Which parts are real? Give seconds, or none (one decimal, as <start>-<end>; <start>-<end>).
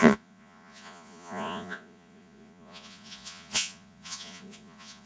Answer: none